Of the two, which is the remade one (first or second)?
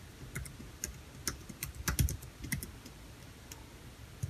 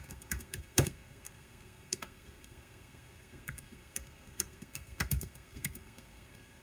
second